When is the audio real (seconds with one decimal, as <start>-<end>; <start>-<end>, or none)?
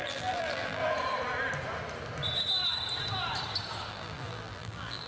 0.8-3.9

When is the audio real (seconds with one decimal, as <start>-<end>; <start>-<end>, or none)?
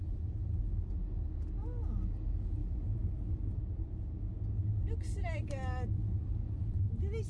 0.0-2.6; 3.6-7.3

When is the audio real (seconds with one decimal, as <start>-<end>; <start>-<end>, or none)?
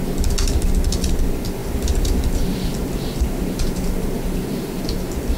0.0-1.6; 4.8-5.4